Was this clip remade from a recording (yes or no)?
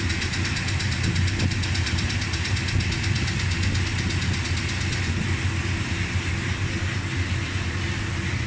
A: no